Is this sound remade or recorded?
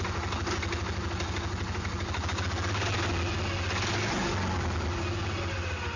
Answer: recorded